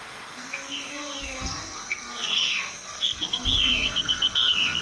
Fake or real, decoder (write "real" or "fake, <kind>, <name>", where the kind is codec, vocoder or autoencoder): fake, codec, SNAC